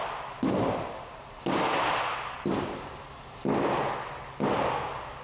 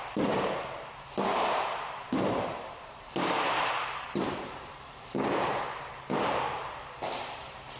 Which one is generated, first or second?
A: second